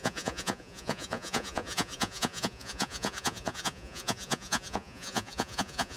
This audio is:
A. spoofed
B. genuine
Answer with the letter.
A